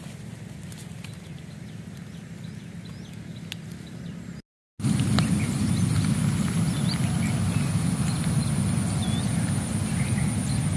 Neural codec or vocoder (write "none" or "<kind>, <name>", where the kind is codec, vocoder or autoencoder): none